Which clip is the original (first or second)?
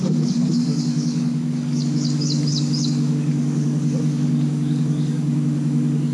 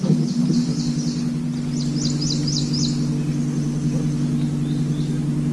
second